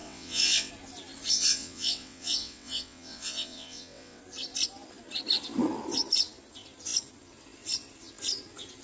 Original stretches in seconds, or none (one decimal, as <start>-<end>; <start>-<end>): 0.7-1.3; 4.2-8.8